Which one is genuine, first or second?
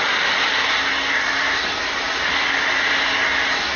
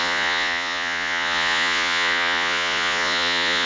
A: first